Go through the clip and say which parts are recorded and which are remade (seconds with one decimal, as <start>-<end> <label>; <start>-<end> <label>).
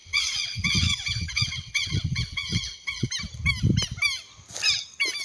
0.0-3.1 remade; 3.1-5.2 recorded